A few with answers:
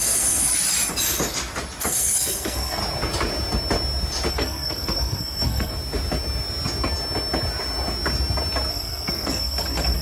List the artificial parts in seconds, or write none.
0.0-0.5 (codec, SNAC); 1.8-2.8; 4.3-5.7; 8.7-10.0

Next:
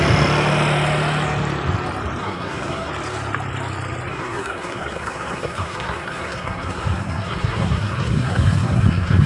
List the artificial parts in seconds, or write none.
2.2-2.9 (codec, SNAC); 4.1-9.3

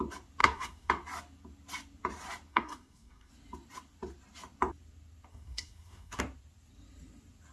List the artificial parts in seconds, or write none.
0.4-0.9 (codec, SNAC); 2.5-3.3; 5.3-6.2

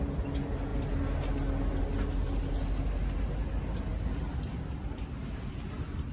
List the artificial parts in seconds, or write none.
none

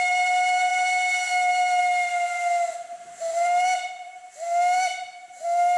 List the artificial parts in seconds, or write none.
none